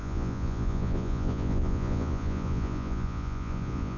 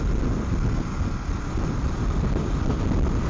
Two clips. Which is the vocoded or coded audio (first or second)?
first